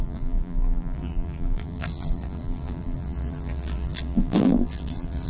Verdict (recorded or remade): remade